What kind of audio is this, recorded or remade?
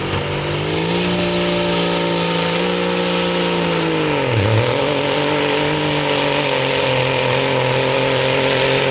recorded